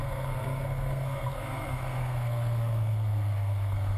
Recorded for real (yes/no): no